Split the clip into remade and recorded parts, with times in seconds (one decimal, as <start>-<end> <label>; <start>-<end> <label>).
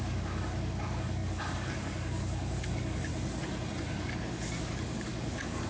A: 0.0-3.1 remade; 3.1-4.0 recorded; 4.0-5.7 remade